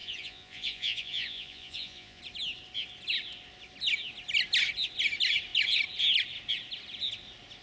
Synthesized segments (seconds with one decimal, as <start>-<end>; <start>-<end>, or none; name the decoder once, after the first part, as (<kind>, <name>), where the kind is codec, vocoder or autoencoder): 0.0-2.2 (vocoder, Vocos)